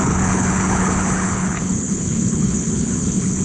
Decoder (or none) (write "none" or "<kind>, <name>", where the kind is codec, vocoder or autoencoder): codec, HILCodec